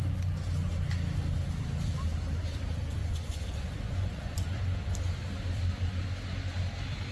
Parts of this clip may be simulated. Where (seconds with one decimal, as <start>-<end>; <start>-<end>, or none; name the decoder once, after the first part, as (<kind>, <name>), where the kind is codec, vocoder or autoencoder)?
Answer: 3.0-4.5 (vocoder, Vocos)